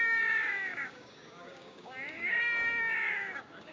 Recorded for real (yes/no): no